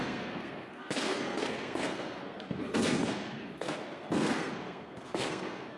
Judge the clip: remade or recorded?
remade